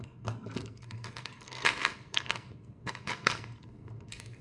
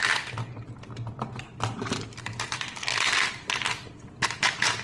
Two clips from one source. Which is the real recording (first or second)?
second